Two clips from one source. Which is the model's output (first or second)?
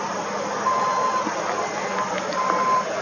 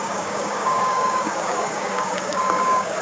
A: second